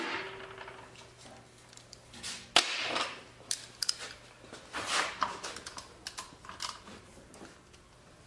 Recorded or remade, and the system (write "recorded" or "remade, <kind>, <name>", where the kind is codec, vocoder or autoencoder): recorded